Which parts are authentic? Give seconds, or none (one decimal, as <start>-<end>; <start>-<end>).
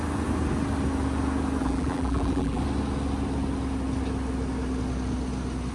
0.0-1.6; 2.6-5.7